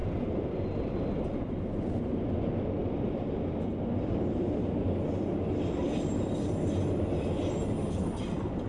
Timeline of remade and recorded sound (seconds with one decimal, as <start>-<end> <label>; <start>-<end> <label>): 0.0-8.7 recorded